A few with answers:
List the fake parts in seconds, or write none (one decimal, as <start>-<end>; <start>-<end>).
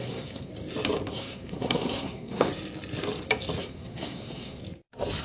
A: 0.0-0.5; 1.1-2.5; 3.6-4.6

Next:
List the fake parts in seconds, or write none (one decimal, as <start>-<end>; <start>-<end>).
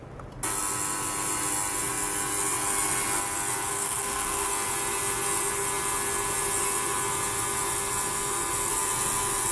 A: 3.7-4.5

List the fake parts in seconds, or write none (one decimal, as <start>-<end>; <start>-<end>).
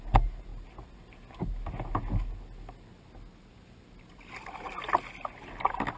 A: none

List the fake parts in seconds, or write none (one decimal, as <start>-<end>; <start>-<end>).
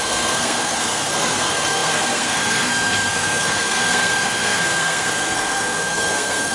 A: 0.0-6.5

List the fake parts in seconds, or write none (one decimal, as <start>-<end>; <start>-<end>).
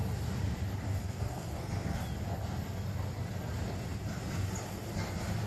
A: 1.0-2.0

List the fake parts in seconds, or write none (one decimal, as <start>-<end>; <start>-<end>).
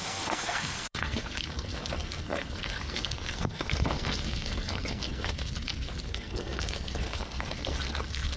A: 0.0-8.4